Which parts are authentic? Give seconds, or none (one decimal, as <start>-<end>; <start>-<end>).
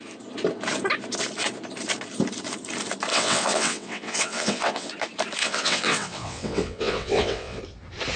0.0-3.1; 4.9-5.4; 7.6-8.2